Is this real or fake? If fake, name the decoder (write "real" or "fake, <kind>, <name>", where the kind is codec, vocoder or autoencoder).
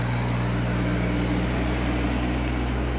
real